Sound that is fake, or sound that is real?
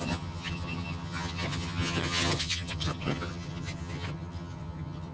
fake